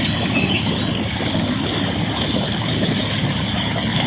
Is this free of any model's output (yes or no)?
yes